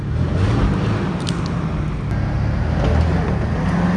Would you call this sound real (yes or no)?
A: yes